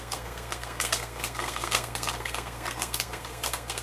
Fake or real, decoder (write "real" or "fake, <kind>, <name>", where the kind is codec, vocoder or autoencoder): fake, codec, SNAC